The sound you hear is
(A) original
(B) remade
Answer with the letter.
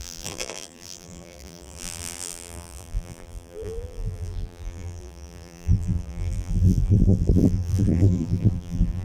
B